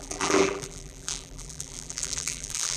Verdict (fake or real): fake